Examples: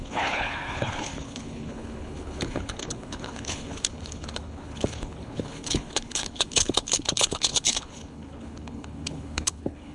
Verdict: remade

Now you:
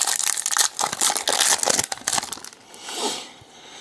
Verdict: recorded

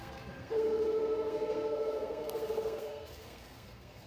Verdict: remade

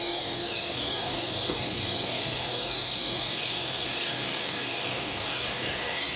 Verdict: remade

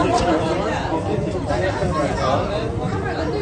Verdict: recorded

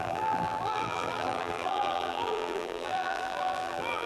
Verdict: remade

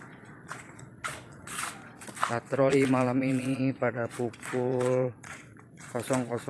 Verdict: remade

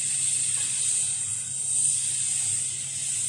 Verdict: recorded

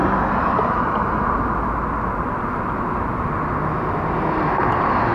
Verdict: recorded